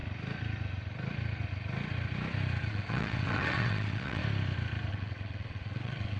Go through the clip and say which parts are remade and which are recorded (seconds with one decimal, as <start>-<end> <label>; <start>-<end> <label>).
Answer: 0.0-2.7 recorded; 2.7-4.2 remade; 4.2-4.9 recorded; 4.9-6.2 remade

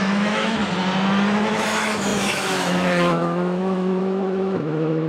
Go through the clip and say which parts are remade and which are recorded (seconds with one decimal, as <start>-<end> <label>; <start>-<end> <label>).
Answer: 0.0-0.6 remade; 0.6-1.5 recorded; 1.5-5.1 remade